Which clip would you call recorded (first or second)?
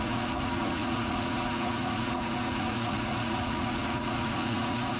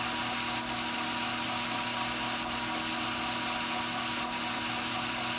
second